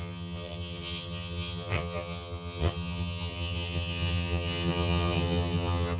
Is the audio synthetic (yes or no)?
yes